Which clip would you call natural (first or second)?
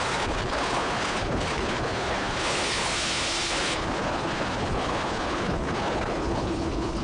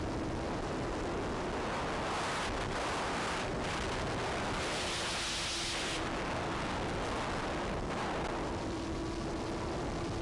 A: second